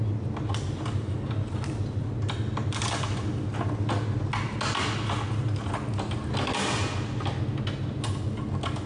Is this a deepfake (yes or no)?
no